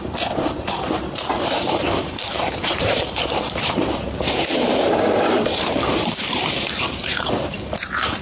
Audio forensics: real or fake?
fake